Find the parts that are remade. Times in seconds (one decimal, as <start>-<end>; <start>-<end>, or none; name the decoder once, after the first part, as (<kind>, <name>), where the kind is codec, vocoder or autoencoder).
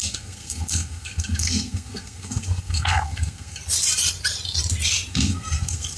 0.0-3.6 (codec, SNAC); 5.1-6.0